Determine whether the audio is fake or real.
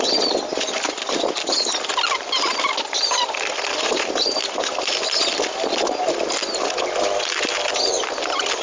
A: real